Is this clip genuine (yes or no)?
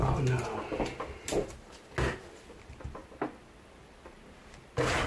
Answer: yes